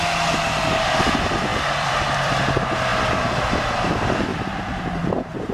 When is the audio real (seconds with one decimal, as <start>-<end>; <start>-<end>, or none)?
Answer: 0.0-1.5; 2.3-4.3; 5.1-5.5